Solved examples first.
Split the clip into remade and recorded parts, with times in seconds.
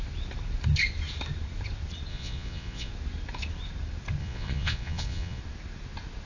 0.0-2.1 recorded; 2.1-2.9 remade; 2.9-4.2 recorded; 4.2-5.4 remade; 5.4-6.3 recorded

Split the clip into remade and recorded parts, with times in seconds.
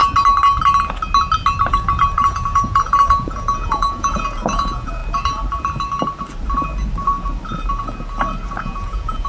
0.0-1.7 recorded; 1.7-5.0 remade; 5.0-8.6 recorded; 8.6-9.3 remade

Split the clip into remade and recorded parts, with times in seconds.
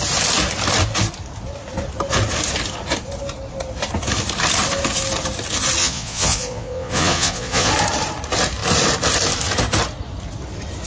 0.0-5.8 recorded; 5.8-7.7 remade; 7.7-10.9 recorded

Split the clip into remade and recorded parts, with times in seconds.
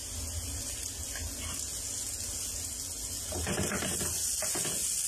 0.0-5.1 recorded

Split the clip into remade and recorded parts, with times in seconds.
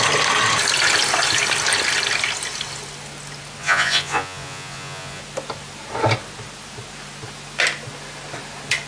0.0-3.6 recorded; 3.6-5.2 remade; 5.2-8.9 recorded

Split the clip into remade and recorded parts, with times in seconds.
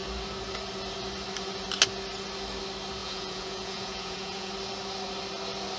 0.0-3.0 recorded; 3.0-4.5 remade; 4.5-5.8 recorded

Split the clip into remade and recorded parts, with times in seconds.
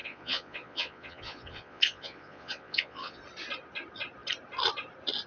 0.0-3.2 remade; 3.2-5.3 recorded